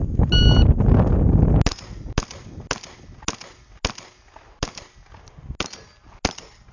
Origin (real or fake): real